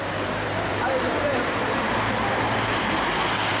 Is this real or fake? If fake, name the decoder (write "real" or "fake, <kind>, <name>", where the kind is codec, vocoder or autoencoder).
fake, vocoder, BigVGAN v2